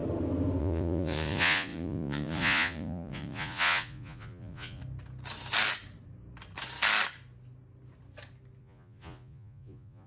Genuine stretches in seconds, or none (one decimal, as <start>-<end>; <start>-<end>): 0.0-0.6; 4.8-8.6